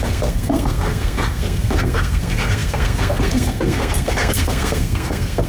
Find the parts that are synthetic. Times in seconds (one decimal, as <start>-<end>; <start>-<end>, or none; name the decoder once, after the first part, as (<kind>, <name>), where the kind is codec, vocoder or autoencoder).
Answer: 0.0-5.5 (codec, SNAC)